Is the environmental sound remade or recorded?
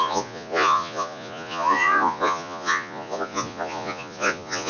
remade